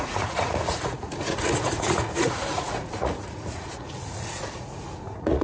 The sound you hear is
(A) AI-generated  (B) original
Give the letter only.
A